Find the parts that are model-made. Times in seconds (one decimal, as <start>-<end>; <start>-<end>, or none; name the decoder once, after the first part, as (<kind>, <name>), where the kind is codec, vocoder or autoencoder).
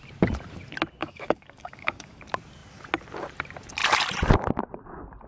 1.0-2.2 (codec, DAC)